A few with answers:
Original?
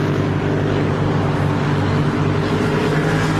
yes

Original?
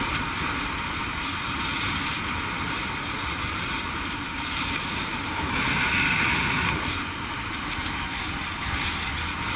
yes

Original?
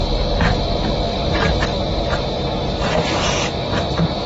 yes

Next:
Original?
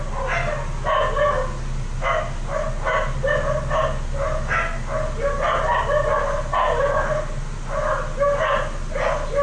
yes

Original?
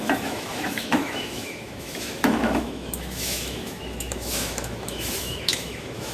no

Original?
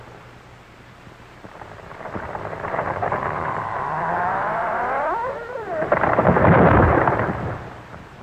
no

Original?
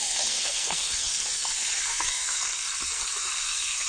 no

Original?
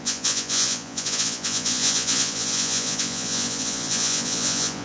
no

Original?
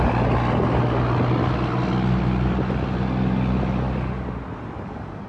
yes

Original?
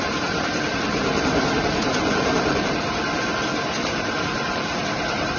no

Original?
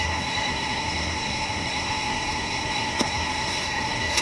no